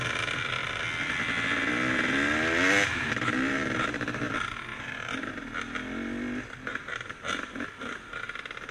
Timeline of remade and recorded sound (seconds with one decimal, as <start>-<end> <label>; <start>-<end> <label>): 0.0-2.9 recorded; 2.9-4.3 remade; 4.3-4.7 recorded; 4.7-5.3 remade; 5.3-6.7 recorded; 6.7-7.5 remade; 7.5-8.7 recorded